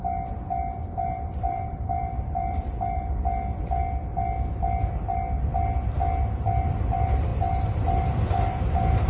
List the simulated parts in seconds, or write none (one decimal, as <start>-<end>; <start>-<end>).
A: 0.8-3.2; 7.3-8.6